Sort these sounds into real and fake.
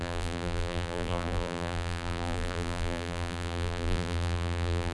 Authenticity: fake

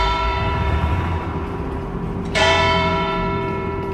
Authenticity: fake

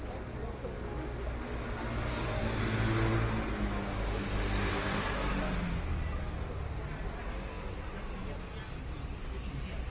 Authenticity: real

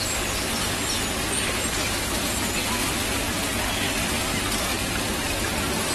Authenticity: real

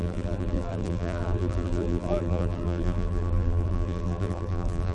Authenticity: fake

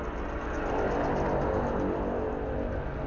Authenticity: real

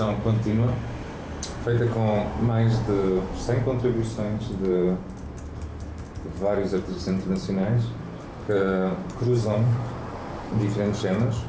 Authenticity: fake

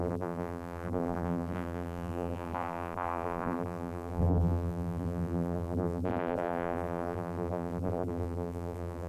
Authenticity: fake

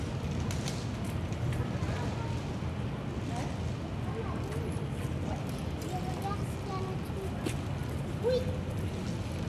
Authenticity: real